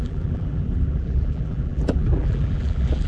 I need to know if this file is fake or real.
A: fake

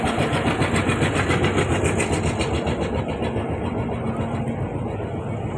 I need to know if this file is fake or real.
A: real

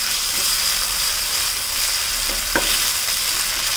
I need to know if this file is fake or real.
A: fake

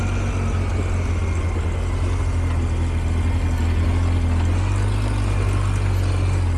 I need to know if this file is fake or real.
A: real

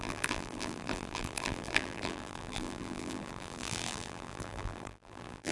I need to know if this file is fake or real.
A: fake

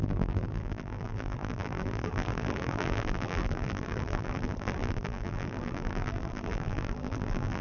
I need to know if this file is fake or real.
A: fake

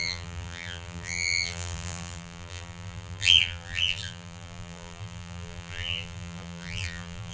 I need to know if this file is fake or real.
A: fake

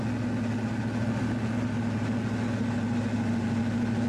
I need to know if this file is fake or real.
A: real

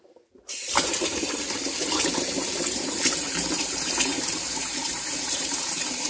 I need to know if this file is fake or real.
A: fake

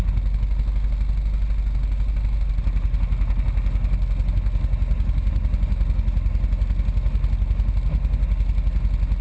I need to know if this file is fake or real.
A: real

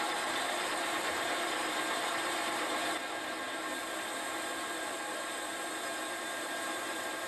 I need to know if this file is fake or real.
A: fake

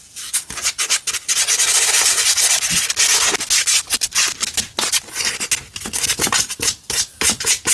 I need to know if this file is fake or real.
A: real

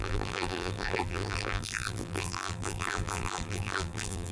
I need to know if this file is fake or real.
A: fake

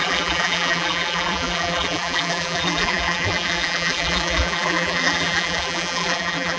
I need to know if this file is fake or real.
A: fake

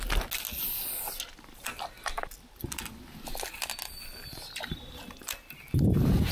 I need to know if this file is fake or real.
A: real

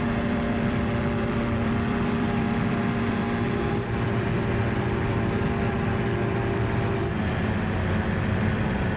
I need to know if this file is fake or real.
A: fake